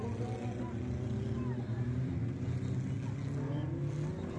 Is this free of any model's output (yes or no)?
yes